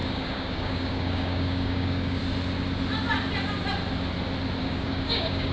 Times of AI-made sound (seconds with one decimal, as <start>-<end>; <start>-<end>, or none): 0.0-2.2; 4.6-5.5